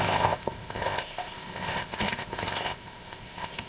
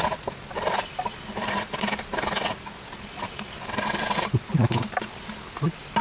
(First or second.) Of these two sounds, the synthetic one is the first